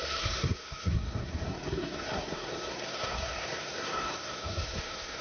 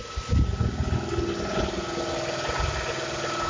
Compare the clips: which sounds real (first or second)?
second